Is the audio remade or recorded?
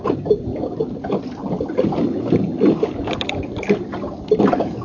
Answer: recorded